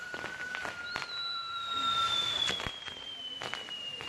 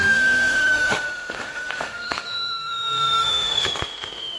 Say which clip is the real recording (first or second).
first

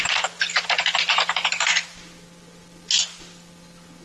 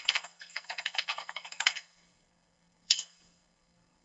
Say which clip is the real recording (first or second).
first